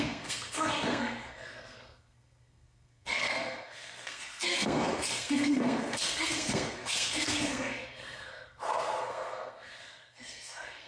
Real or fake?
fake